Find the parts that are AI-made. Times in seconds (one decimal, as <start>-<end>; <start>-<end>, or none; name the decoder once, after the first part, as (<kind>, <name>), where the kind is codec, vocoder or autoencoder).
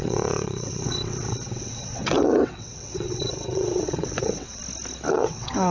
0.0-4.6 (vocoder, WaveNeXt); 5.1-5.7